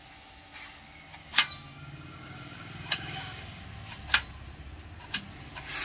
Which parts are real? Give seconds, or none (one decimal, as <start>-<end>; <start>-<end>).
0.0-1.2; 3.6-5.8